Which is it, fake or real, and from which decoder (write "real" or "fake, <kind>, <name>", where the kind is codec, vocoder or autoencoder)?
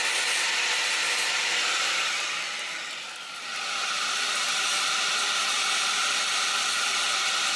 real